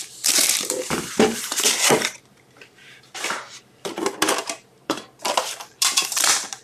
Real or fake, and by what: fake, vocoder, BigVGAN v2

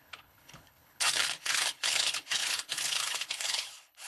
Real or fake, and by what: fake, codec, HILCodec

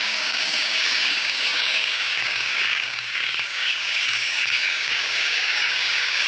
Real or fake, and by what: fake, codec, DAC